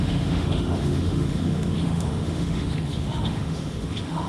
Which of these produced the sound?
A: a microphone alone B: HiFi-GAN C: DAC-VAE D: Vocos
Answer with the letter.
C